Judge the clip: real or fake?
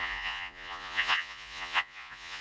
fake